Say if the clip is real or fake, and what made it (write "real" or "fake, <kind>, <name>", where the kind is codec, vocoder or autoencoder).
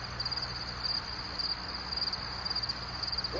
real